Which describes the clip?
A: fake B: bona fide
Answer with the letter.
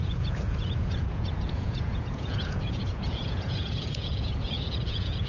A